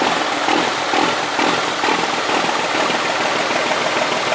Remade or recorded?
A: recorded